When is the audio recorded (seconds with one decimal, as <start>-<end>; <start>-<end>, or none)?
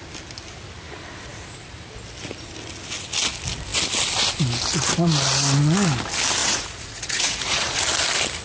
0.0-6.4; 7.8-8.4